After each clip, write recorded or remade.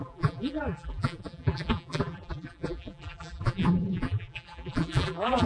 remade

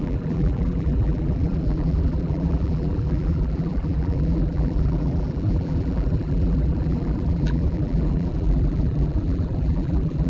remade